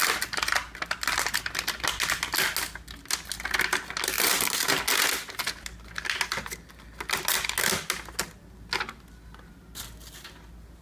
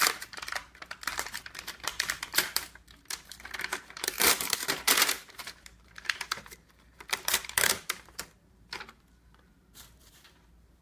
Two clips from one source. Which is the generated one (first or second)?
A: second